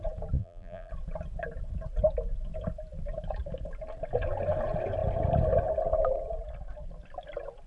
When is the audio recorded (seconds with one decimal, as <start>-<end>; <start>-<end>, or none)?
0.0-0.4; 0.9-7.7